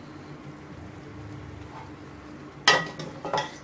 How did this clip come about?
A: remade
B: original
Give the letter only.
B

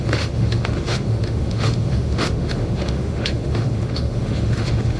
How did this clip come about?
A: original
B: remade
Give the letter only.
B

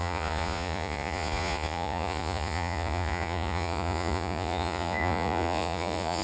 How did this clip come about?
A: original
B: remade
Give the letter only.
B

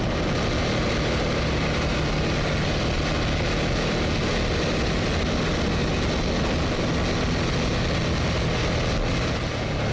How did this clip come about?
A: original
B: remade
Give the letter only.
A